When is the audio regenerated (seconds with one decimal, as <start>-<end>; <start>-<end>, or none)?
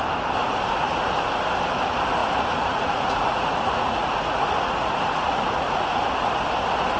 0.4-1.4; 2.2-6.4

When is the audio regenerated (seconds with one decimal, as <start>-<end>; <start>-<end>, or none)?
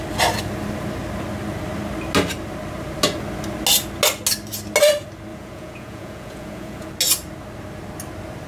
5.3-6.9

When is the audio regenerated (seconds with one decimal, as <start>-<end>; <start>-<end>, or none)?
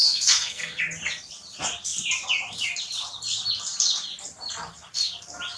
0.0-0.8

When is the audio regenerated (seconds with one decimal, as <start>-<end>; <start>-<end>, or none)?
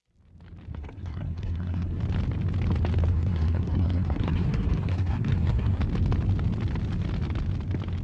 0.7-2.0; 3.1-5.8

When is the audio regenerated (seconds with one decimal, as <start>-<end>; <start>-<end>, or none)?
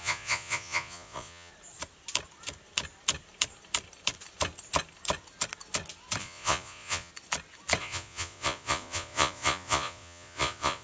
0.0-1.5; 6.2-7.1; 7.8-10.8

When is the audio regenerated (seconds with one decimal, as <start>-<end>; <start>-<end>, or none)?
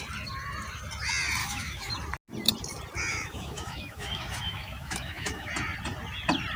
1.4-1.9; 3.1-5.5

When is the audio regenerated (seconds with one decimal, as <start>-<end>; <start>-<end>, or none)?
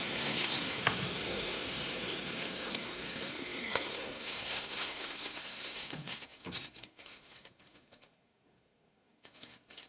0.0-9.9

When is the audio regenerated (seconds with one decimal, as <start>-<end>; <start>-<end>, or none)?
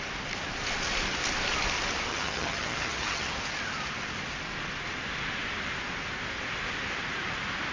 2.1-3.4